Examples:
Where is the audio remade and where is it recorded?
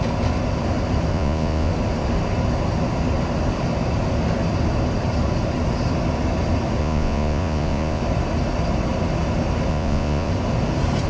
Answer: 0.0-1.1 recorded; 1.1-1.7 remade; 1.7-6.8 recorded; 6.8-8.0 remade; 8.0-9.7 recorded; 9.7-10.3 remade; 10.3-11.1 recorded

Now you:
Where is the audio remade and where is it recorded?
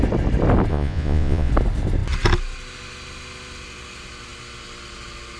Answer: 0.0-0.7 recorded; 0.7-1.5 remade; 1.5-5.4 recorded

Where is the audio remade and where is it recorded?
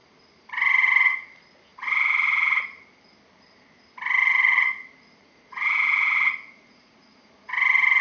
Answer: 0.0-4.2 recorded; 4.2-7.5 remade; 7.5-8.0 recorded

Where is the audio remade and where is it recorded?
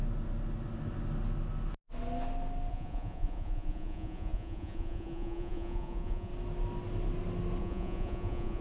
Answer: 0.0-2.7 recorded; 2.7-6.3 remade; 6.3-7.6 recorded; 7.6-8.6 remade